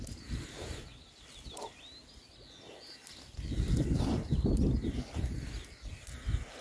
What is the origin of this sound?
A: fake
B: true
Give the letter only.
B